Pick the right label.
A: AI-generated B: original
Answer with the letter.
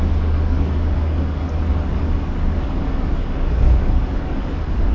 A